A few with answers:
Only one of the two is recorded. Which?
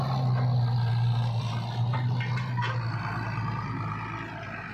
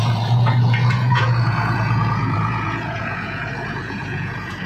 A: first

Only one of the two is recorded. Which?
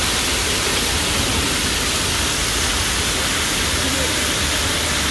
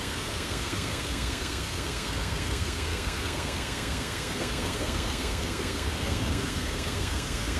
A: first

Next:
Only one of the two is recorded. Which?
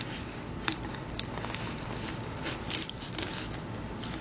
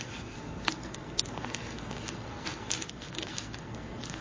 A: first